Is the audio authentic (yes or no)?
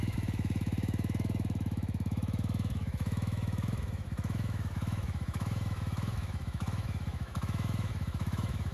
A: no